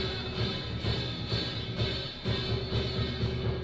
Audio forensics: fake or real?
real